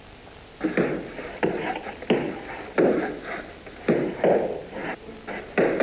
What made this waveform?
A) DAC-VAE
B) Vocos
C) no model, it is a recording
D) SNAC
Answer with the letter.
C